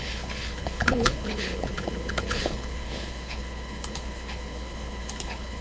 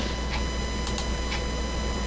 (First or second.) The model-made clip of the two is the first